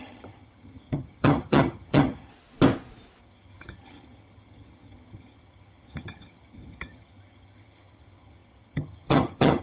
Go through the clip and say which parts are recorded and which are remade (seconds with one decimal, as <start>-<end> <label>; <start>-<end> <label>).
0.0-2.3 remade; 2.3-3.2 recorded; 3.2-9.6 remade

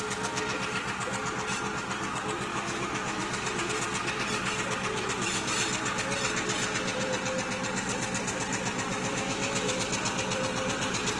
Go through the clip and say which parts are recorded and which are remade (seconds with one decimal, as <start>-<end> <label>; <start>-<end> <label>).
0.0-2.5 recorded; 2.5-3.7 remade; 3.7-8.9 recorded; 8.9-9.8 remade; 9.8-11.2 recorded